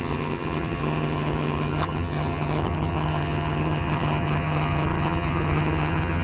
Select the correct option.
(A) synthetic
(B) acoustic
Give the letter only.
A